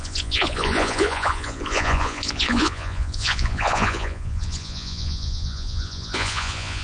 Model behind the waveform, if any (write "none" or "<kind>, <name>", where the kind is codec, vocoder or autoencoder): vocoder, Vocos